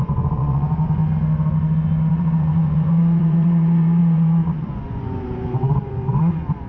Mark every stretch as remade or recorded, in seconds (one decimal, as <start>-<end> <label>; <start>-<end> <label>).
0.0-1.0 remade; 1.0-2.1 recorded; 2.1-6.7 remade